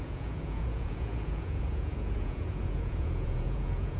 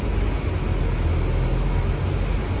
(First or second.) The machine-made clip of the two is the first